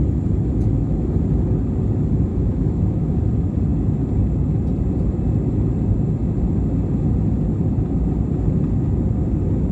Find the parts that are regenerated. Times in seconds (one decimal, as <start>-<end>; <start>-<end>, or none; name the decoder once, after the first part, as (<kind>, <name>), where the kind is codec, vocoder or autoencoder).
2.3-3.2 (autoencoder, DAC-VAE)